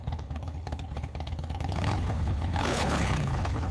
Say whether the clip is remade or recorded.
remade